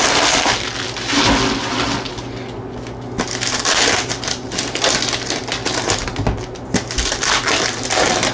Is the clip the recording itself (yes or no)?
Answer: yes